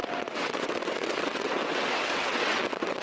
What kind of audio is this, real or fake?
fake